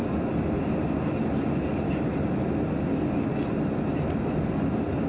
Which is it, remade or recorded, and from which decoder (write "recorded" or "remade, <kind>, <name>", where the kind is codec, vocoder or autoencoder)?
recorded